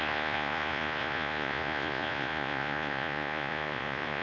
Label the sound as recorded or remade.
remade